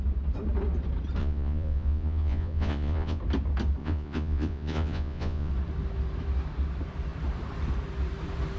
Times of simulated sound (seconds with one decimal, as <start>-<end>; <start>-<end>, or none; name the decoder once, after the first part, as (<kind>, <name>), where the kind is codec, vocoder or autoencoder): 1.2-3.2 (vocoder, Vocos); 3.8-5.5

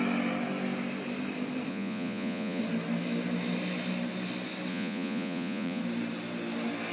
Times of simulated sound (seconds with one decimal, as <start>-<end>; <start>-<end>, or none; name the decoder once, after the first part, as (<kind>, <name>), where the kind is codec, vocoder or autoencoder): 1.7-2.6 (vocoder, Vocos); 4.7-5.8